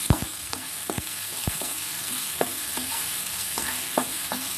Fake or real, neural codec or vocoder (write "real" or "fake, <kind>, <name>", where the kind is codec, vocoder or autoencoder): fake, codec, SNAC